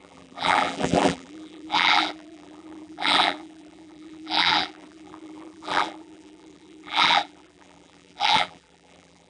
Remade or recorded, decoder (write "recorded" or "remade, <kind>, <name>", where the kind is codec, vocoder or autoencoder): remade, vocoder, BigVGAN v2